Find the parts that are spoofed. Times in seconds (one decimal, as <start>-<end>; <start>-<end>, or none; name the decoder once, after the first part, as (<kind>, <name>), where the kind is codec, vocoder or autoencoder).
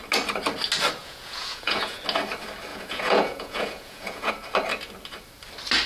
1.0-2.0 (vocoder, Vocos); 2.7-4.3